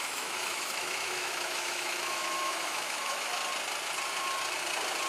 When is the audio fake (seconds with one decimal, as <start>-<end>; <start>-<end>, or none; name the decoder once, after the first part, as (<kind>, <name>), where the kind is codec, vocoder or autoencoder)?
0.0-3.4 (autoencoder, DAC-VAE)